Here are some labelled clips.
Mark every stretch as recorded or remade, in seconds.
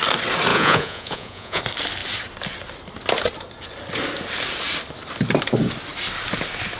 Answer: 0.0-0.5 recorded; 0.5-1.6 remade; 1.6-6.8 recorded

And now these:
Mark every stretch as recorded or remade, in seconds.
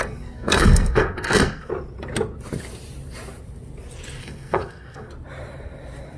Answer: 0.0-1.7 remade; 1.7-4.2 recorded; 4.2-5.1 remade; 5.1-6.2 recorded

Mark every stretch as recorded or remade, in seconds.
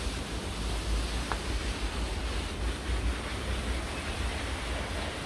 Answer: 0.0-5.3 recorded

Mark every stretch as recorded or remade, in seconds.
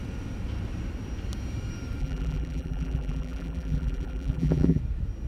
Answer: 0.0-2.0 recorded; 2.0-4.8 remade; 4.8-5.3 recorded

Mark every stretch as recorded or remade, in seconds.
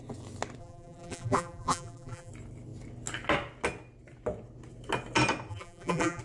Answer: 0.0-0.6 recorded; 0.6-2.3 remade; 2.3-5.5 recorded; 5.5-6.2 remade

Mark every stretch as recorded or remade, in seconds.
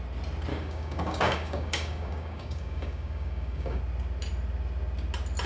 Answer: 0.0-0.5 recorded; 0.5-3.8 remade; 3.8-5.5 recorded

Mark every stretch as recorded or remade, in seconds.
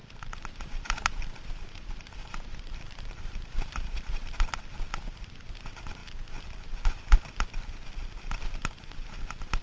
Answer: 0.0-4.4 remade; 4.4-9.6 recorded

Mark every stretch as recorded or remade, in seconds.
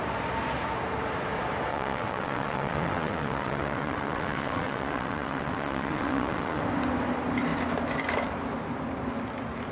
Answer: 0.0-1.7 recorded; 1.7-6.6 remade; 6.6-9.7 recorded